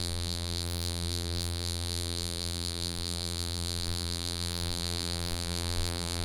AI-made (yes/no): yes